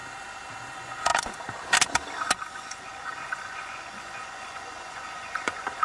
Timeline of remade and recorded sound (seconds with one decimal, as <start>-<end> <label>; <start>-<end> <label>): 0.0-0.7 recorded; 0.7-1.1 remade; 1.1-2.5 recorded; 2.5-5.8 remade

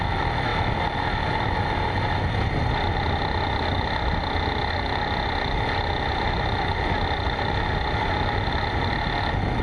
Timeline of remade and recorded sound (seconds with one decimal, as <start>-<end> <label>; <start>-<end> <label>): 0.0-9.6 recorded

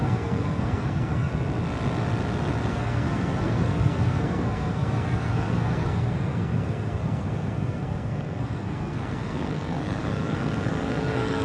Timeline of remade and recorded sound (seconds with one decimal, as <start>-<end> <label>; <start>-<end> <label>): 0.0-1.3 remade; 1.3-2.7 recorded; 2.7-11.4 remade

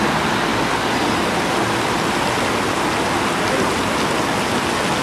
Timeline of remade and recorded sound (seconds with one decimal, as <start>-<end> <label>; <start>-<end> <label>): 0.0-5.0 recorded

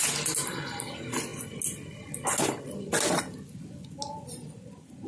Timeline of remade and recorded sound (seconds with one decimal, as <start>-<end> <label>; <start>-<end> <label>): 0.0-5.1 recorded

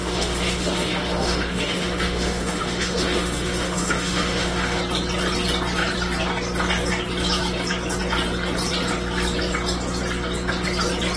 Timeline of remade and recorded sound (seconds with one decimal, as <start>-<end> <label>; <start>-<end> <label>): 0.0-4.8 remade; 4.8-11.2 recorded